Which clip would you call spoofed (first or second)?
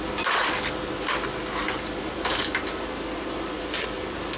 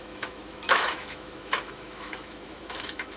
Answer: second